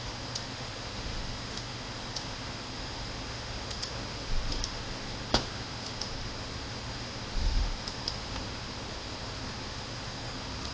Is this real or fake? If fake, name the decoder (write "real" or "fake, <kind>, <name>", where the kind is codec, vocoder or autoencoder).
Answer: fake, autoencoder, DAC-VAE